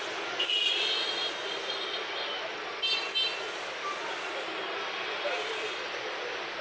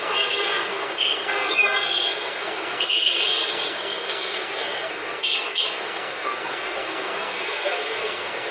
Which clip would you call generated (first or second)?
second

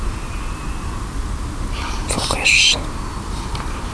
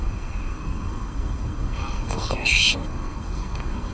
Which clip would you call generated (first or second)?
second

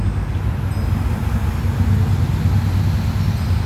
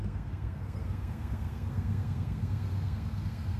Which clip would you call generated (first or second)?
second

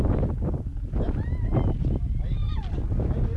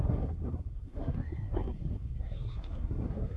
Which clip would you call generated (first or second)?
second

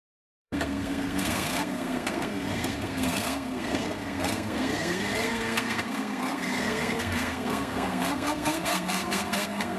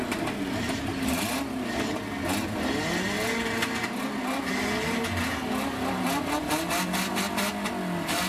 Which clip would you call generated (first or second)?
first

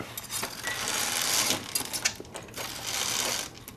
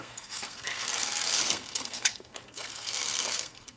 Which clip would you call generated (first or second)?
second